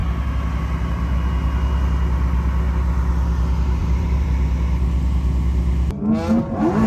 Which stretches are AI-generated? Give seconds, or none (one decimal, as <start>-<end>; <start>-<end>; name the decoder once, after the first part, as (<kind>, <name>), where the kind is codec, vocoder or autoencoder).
3.8-4.5 (vocoder, BigVGAN v2)